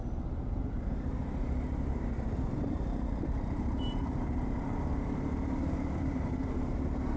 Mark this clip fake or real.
fake